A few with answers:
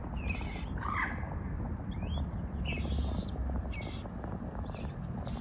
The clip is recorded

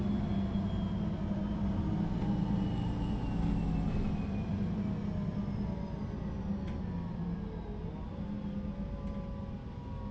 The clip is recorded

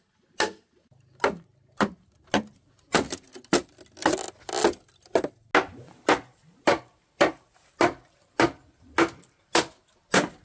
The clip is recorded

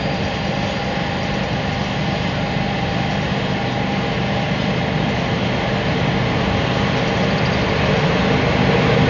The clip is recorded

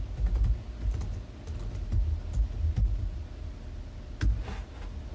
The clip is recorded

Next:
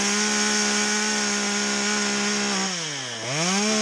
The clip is recorded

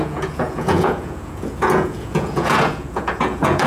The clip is remade